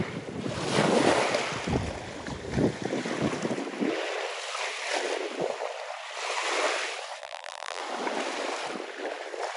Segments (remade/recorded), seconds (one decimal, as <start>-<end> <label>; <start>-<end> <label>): 0.0-7.2 recorded; 7.2-7.8 remade; 7.8-9.6 recorded